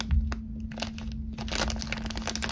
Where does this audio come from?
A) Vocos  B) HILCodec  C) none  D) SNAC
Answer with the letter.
C